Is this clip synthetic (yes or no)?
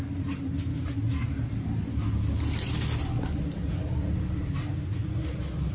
no